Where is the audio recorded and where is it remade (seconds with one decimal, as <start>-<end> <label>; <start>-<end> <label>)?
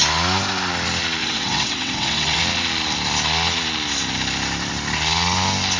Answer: 0.0-1.2 recorded; 1.2-2.4 remade; 2.4-5.8 recorded